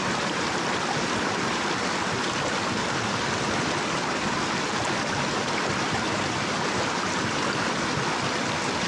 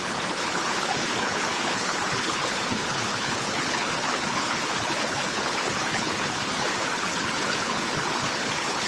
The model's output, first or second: second